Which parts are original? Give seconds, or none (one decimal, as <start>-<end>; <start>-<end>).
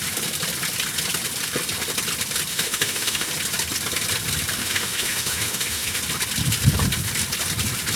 0.0-2.5; 3.3-4.6; 6.0-8.0